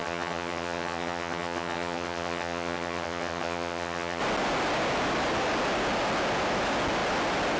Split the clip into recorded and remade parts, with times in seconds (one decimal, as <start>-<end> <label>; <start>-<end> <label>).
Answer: 0.0-4.2 remade; 4.2-7.6 recorded